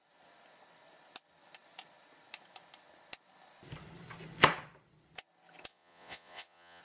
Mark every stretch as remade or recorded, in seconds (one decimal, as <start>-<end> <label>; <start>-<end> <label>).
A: 0.0-5.7 recorded; 5.7-6.8 remade